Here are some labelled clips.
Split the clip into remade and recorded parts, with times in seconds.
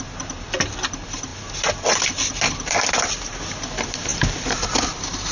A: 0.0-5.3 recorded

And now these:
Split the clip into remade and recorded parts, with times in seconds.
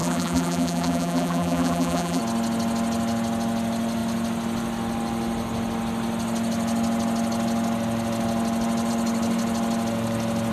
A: 0.0-2.2 remade; 2.2-10.5 recorded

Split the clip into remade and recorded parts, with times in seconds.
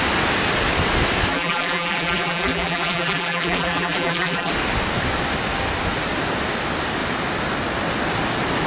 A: 0.0-1.3 recorded; 1.3-4.5 remade; 4.5-8.7 recorded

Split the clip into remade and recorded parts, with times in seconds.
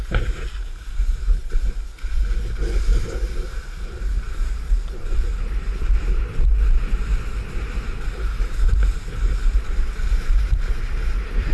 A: 0.0-1.4 remade; 1.4-3.4 recorded; 3.4-5.3 remade; 5.3-8.4 recorded; 8.4-11.5 remade